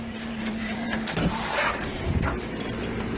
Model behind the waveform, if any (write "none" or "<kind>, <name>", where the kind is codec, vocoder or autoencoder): vocoder, BigVGAN v2